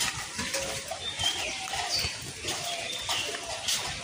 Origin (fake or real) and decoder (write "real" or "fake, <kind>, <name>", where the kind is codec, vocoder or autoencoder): real